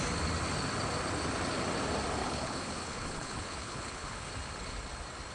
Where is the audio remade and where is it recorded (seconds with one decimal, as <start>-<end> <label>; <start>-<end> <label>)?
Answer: 0.0-2.2 recorded; 2.2-4.3 remade; 4.3-5.3 recorded